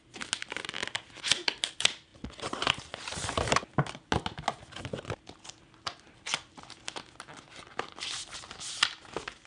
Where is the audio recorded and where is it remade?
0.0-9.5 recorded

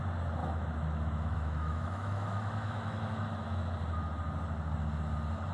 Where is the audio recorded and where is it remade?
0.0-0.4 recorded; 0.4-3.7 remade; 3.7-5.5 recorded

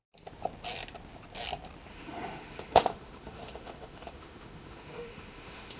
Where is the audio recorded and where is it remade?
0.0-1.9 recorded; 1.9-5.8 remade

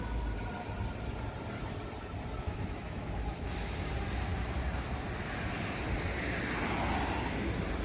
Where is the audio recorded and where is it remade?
0.0-2.4 recorded; 2.4-3.9 remade; 3.9-7.8 recorded

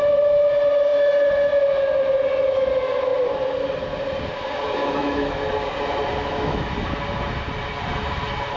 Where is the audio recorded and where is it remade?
0.0-5.0 recorded; 5.0-5.5 remade; 5.5-6.2 recorded; 6.2-6.7 remade; 6.7-8.6 recorded